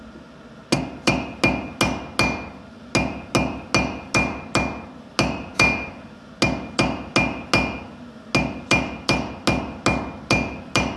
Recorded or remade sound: recorded